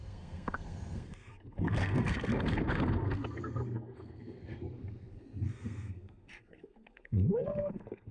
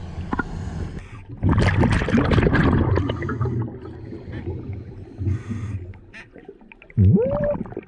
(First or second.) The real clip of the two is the second